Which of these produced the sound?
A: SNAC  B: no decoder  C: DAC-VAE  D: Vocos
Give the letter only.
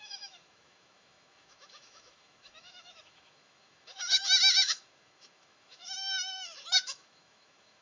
C